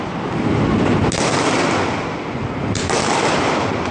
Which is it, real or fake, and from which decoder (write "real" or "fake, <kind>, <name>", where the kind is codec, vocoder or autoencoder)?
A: real